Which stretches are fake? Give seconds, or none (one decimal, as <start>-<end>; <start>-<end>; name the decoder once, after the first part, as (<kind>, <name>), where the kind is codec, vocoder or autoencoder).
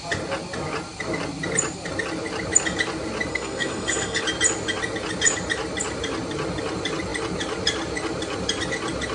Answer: 3.3-4.2 (codec, SNAC)